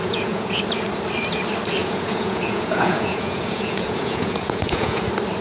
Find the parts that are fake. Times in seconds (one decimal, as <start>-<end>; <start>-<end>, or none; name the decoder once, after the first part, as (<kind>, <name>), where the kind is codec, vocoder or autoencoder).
0.0-0.6 (vocoder, Vocos); 1.8-5.0